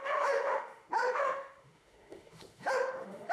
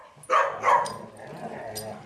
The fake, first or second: first